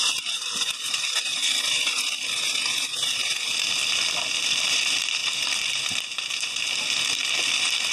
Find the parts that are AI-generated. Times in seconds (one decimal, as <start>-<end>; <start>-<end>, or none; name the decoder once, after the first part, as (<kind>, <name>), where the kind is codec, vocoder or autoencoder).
0.0-1.3 (vocoder, BigVGAN v2); 2.9-3.8; 4.7-7.2